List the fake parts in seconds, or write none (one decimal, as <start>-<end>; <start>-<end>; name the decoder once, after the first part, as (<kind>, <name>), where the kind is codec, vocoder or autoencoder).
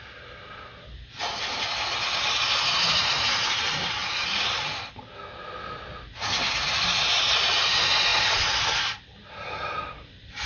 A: none